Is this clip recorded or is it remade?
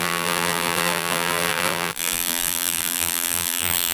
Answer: remade